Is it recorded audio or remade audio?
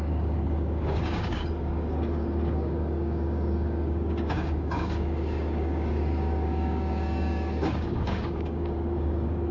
remade